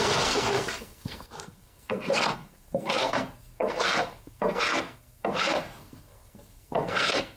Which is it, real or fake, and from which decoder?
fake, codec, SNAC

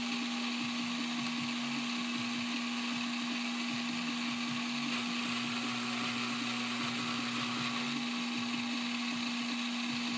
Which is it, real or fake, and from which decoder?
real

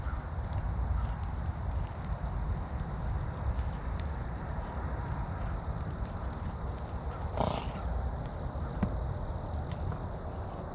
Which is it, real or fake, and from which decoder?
real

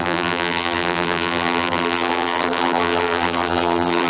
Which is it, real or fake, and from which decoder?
fake, vocoder, BigVGAN v2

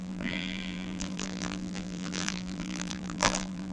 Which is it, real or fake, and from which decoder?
fake, vocoder, BigVGAN v2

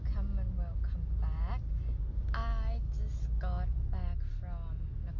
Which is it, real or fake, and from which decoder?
real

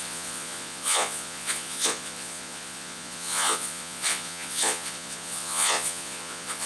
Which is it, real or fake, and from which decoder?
fake, vocoder, Vocos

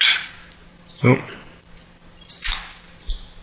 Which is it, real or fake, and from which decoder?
real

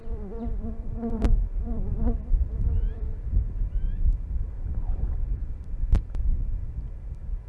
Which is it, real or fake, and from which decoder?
fake, vocoder, BigVGAN v2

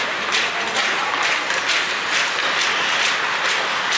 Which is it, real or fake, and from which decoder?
real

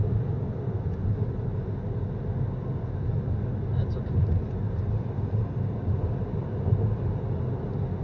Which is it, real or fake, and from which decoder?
real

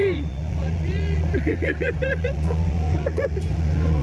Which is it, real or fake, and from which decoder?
fake, vocoder, Vocos